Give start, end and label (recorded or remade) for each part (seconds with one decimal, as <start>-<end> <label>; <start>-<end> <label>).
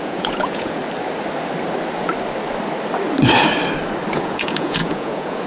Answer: 0.0-0.8 remade; 0.8-4.1 recorded; 4.1-5.5 remade